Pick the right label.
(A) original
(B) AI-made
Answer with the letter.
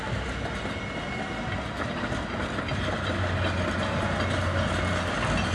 A